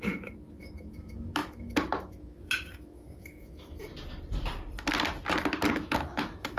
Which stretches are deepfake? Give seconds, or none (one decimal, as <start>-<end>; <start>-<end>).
0.0-3.9; 5.7-6.6